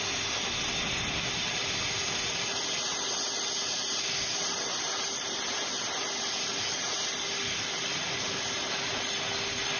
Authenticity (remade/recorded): recorded